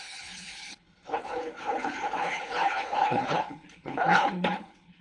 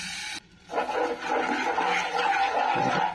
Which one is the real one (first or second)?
second